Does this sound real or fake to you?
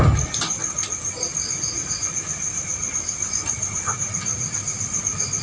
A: real